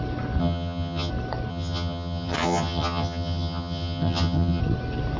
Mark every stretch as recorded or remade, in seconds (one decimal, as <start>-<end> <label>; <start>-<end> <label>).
0.0-0.4 recorded; 0.4-1.1 remade; 1.1-1.5 recorded; 1.5-4.6 remade; 4.6-5.2 recorded